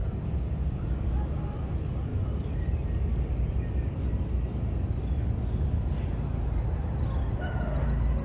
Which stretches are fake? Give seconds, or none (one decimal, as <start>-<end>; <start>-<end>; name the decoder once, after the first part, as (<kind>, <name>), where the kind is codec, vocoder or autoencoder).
0.0-1.1 (codec, DAC)